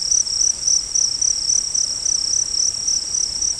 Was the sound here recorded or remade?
recorded